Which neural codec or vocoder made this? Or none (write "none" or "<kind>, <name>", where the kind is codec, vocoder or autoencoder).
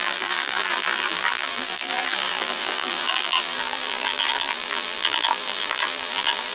vocoder, BigVGAN v2